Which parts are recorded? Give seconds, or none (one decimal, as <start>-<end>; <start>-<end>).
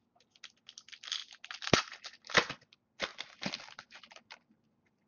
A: 0.0-5.1